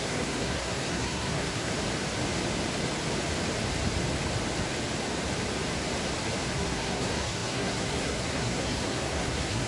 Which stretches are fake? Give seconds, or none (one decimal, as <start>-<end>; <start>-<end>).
0.0-1.7; 6.5-9.7